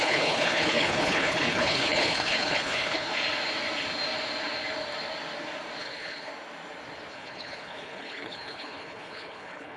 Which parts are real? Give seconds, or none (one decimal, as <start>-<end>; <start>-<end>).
3.1-5.8; 6.3-7.1